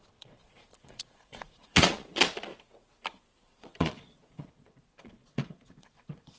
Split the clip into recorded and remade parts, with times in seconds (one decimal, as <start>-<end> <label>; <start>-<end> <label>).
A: 0.0-2.5 remade; 2.5-3.4 recorded; 3.4-6.4 remade